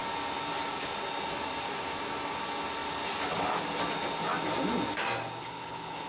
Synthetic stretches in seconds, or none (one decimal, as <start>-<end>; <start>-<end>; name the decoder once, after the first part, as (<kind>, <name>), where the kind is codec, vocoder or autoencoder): 5.4-6.1 (codec, HILCodec)